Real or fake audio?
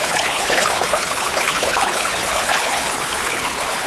fake